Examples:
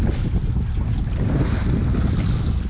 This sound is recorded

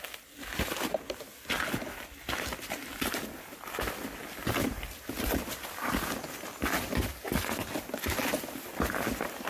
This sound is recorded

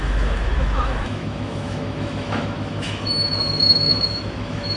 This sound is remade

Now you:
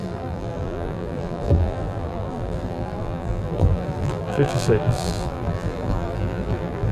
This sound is remade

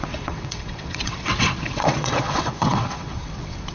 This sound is remade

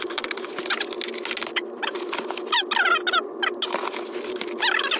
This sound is recorded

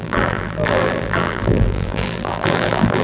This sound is remade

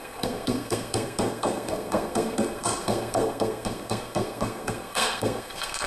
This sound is remade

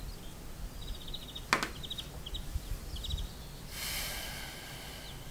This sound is recorded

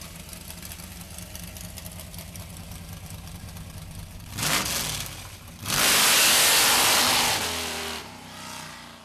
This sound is recorded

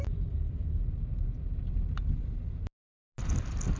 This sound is recorded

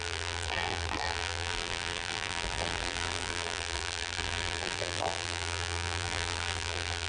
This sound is remade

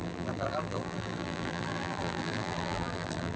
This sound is remade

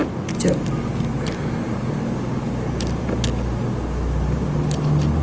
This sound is recorded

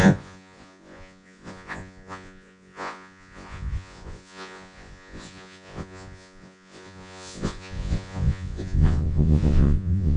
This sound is remade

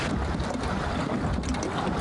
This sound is recorded